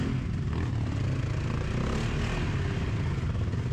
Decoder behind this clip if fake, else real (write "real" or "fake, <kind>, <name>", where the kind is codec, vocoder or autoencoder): real